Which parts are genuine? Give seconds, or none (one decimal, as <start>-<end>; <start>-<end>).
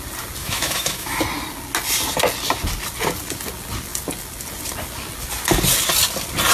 0.0-0.4; 1.2-6.5